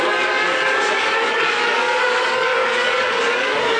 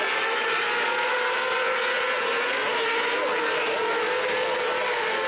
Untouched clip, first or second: second